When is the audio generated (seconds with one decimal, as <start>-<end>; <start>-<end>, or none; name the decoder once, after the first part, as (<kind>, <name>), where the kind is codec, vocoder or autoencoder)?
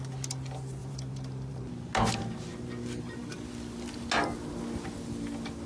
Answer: 0.8-1.7 (vocoder, BigVGAN v2)